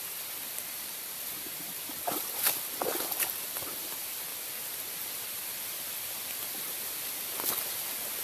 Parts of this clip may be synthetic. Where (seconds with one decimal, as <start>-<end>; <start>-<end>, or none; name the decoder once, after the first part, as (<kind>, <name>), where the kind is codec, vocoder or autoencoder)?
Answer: none